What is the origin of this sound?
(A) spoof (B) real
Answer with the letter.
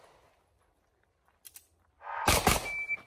B